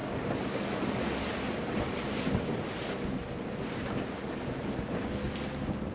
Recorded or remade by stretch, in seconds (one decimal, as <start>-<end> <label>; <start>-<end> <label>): 0.0-5.9 recorded